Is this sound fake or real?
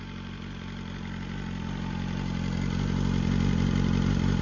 real